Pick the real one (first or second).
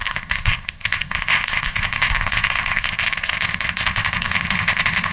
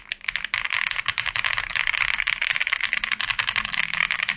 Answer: second